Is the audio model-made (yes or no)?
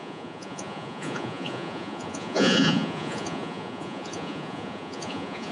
yes